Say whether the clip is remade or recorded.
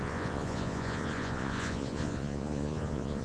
remade